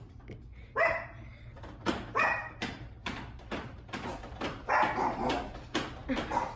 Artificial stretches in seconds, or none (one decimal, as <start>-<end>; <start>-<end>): 1.3-4.5